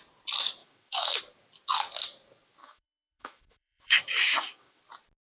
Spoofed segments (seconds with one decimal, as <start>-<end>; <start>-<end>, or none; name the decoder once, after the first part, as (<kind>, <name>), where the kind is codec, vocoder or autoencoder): 0.6-1.2 (autoencoder, DAC-VAE); 2.6-4.8